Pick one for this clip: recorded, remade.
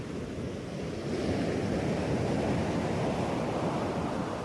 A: recorded